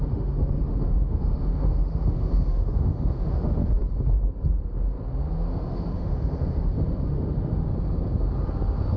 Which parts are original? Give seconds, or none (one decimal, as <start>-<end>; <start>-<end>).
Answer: 3.8-5.3; 7.7-9.0

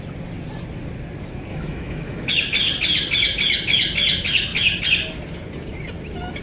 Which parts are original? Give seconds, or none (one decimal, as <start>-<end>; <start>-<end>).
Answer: 0.0-1.5; 2.3-6.4

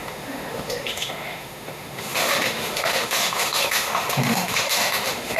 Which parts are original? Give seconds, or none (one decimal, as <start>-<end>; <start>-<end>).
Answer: none

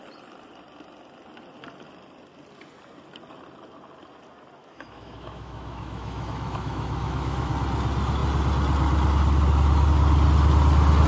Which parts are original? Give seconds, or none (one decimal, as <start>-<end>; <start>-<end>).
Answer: 0.0-4.6; 7.5-11.1

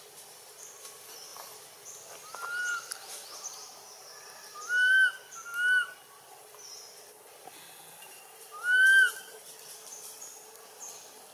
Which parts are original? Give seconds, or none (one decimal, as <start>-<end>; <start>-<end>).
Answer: 0.0-11.3

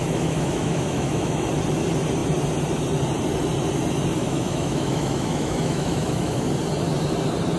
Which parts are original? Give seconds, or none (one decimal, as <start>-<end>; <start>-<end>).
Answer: 1.5-4.2; 6.5-7.6